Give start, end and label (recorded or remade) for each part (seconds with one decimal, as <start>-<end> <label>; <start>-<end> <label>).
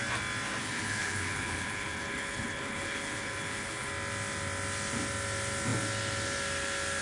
0.0-0.6 recorded; 0.6-3.9 remade; 3.9-7.0 recorded